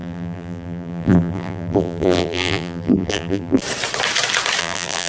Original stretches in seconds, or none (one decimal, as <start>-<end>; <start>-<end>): 3.6-4.6